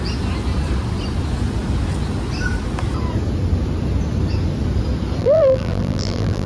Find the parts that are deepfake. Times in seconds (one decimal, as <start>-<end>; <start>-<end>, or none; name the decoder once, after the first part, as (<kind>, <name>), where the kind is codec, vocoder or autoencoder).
5.2-6.5 (vocoder, BigVGAN v2)